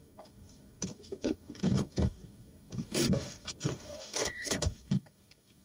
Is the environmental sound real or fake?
fake